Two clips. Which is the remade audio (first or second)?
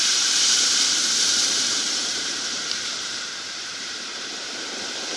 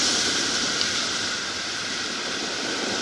first